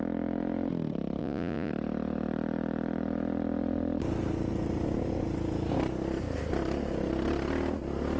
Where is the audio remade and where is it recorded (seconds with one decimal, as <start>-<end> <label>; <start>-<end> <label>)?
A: 0.0-1.2 recorded; 1.2-1.7 remade; 1.7-8.2 recorded